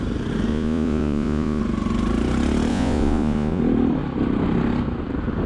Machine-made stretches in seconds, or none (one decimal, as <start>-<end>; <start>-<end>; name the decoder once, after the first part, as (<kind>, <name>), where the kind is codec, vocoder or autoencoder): 0.5-1.6 (vocoder, Vocos); 2.7-3.6